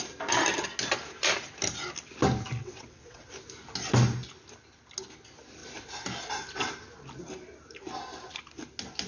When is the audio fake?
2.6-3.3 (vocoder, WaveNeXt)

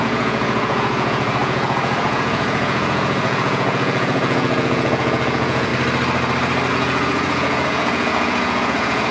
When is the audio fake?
0.0-5.7 (vocoder, Vocos); 6.7-9.1

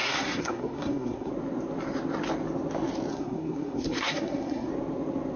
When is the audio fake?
0.0-1.3 (codec, SNAC); 3.1-4.7